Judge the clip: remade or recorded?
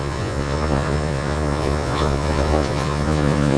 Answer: remade